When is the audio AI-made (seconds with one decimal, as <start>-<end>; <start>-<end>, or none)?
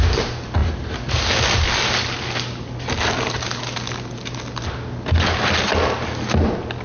none